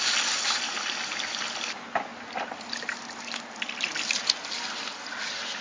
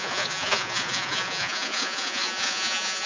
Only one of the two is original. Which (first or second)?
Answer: first